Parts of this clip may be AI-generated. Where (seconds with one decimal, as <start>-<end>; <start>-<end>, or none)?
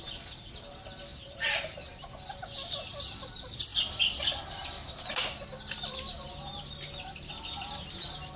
1.1-1.6